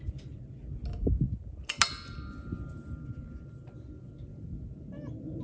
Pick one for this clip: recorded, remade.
recorded